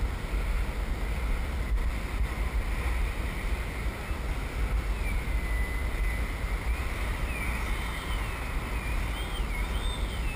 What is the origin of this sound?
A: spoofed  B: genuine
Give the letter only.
B